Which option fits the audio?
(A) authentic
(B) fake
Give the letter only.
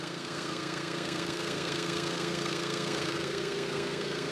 B